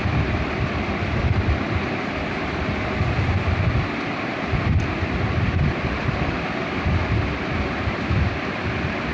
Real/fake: fake